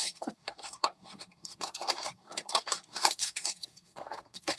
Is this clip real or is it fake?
fake